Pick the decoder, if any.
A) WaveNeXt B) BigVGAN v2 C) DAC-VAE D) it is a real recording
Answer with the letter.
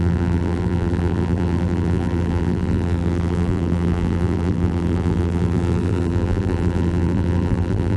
B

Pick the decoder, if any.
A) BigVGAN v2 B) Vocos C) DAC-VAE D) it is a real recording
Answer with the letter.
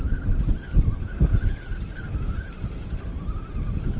D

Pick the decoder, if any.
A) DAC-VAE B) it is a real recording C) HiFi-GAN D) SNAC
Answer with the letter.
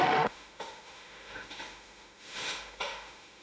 A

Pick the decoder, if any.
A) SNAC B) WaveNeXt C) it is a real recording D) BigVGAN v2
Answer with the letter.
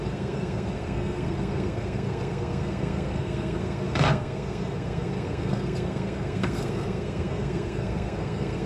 A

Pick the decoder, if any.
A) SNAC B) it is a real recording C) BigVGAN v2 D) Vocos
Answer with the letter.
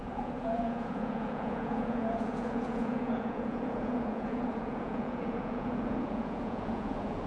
D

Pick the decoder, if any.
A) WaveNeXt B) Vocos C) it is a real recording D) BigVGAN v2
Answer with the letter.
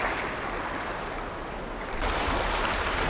C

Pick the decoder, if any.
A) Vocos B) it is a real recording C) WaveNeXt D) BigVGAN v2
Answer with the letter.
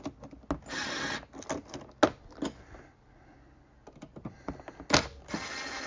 B